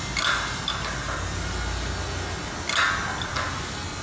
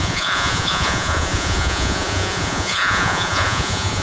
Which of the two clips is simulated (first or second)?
second